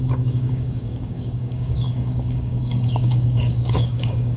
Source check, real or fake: fake